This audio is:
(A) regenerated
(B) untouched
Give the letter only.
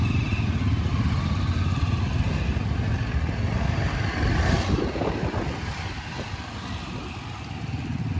B